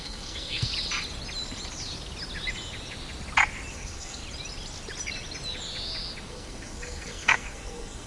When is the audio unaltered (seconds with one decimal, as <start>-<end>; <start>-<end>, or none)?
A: 0.7-3.7; 4.2-6.3